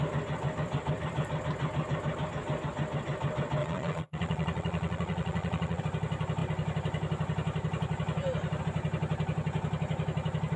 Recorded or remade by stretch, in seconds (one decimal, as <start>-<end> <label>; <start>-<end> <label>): 0.0-3.6 recorded; 3.6-5.8 remade; 5.8-10.6 recorded